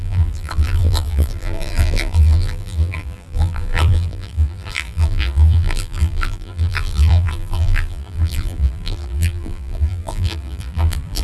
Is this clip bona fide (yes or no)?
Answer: no